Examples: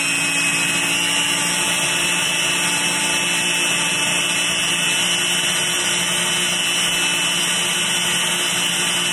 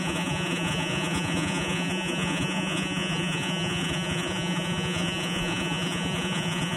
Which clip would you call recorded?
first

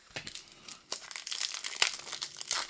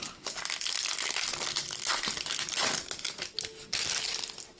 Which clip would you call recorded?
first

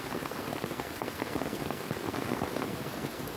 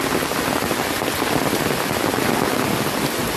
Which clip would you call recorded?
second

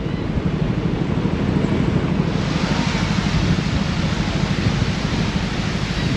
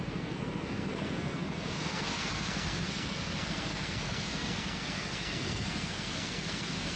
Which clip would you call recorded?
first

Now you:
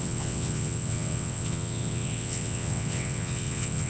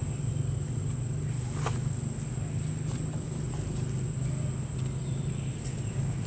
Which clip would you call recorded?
second